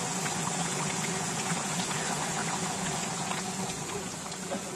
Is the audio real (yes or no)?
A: no